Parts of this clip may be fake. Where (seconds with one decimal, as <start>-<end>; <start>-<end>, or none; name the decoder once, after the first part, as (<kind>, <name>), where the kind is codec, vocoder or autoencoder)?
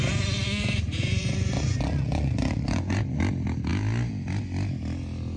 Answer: 0.0-3.2 (vocoder, Vocos)